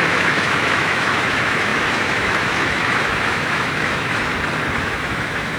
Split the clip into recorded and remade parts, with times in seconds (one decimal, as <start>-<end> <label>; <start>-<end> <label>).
0.0-4.3 remade; 4.3-4.8 recorded; 4.8-5.6 remade